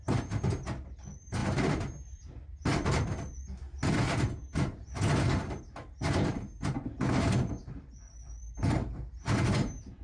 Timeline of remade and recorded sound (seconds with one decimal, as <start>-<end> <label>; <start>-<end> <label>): 0.0-10.0 recorded